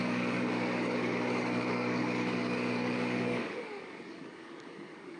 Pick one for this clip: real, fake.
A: fake